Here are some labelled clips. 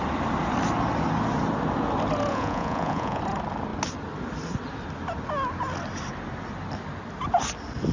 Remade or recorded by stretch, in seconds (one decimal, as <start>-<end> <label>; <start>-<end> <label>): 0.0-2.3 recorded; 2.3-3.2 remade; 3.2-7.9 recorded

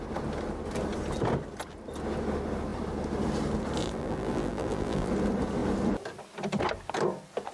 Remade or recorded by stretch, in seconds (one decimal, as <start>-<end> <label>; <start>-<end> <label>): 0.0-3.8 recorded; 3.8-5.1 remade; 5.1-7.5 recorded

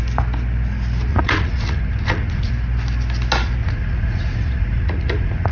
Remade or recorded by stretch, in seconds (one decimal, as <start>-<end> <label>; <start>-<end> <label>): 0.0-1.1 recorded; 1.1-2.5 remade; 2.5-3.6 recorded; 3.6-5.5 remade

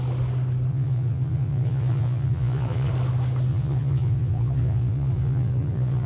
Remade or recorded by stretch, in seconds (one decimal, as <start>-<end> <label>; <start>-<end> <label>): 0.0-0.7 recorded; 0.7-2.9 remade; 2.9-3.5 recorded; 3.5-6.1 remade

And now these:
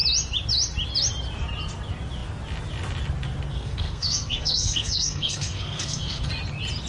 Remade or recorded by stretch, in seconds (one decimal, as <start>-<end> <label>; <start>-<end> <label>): 0.0-3.5 recorded; 3.5-6.3 remade; 6.3-6.9 recorded

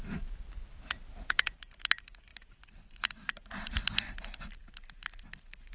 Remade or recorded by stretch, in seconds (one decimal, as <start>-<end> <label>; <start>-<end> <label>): 0.0-5.7 recorded

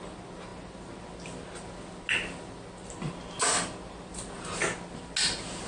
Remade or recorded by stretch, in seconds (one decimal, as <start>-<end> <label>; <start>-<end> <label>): 0.0-5.7 recorded

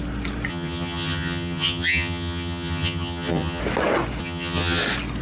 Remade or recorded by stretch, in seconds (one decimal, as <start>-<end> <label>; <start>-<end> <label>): 0.0-0.5 recorded; 0.5-3.6 remade; 3.6-4.2 recorded; 4.2-4.8 remade; 4.8-5.2 recorded